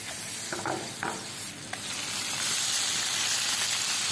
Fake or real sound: real